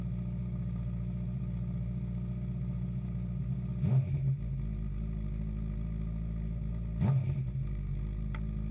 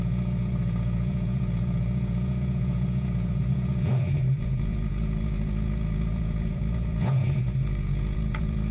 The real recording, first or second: first